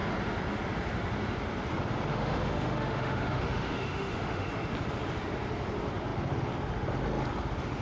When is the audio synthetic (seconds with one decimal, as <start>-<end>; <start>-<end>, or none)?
2.1-4.5